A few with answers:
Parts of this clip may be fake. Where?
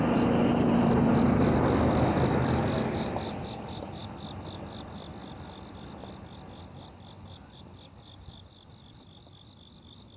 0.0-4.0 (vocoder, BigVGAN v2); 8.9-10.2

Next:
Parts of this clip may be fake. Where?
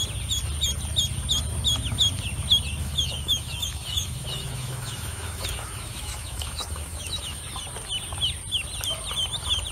2.8-7.4 (autoencoder, DAC-VAE)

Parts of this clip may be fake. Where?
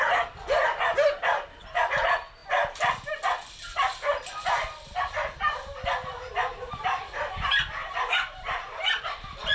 7.8-9.0 (vocoder, BigVGAN v2)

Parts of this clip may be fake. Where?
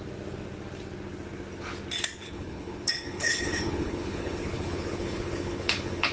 2.2-6.1 (codec, HILCodec)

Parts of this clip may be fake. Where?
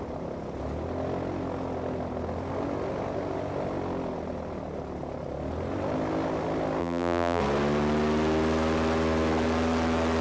6.8-7.4 (vocoder, BigVGAN v2)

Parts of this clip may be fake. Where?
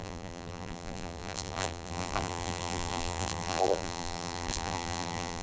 0.0-5.4 (vocoder, BigVGAN v2)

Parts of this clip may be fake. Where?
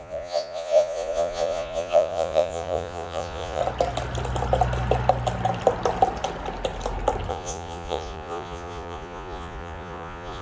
0.0-3.6 (vocoder, Vocos); 7.3-10.4